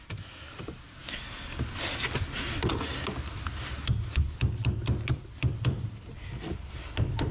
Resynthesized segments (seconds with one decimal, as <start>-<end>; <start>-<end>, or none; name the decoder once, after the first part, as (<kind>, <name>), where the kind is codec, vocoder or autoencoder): none